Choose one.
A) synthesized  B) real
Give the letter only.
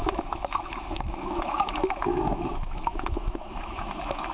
A